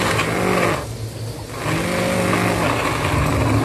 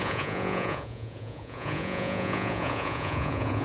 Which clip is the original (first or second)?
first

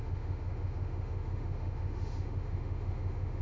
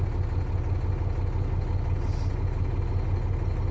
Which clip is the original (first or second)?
second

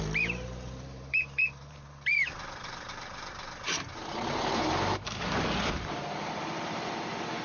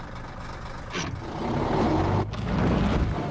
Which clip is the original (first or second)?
second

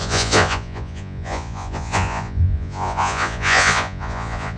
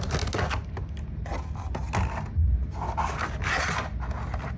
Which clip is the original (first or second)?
second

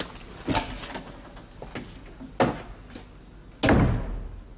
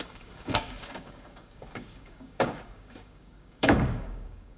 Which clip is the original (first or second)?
first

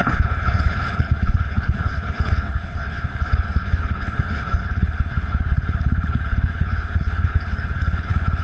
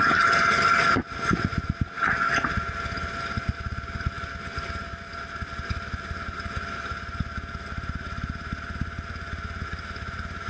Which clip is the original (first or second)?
second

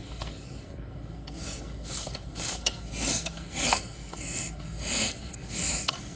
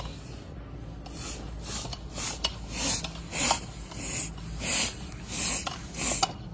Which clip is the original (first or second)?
second